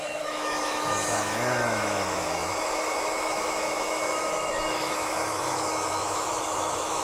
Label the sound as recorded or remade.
remade